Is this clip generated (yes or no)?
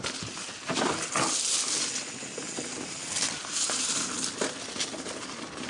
no